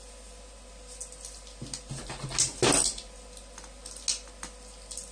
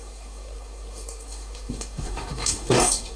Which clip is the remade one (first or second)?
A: second